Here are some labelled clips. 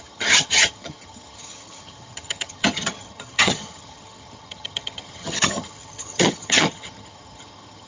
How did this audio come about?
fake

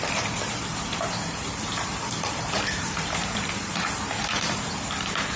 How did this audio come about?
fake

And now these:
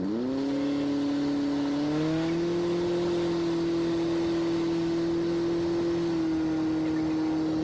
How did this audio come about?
real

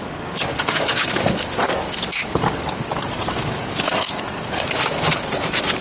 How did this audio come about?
fake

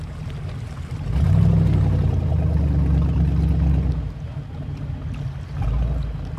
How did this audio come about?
real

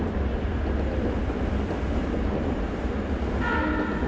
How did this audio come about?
real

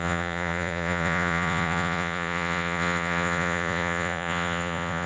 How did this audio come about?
fake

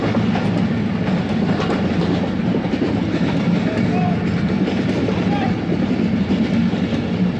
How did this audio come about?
real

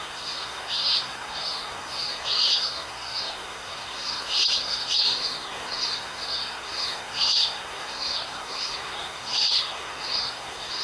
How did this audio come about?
fake